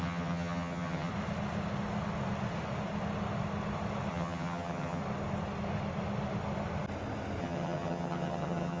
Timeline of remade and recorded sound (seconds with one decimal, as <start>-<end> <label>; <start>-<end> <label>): 0.0-1.1 remade; 1.1-4.1 recorded; 4.1-5.0 remade; 5.0-7.4 recorded; 7.4-8.8 remade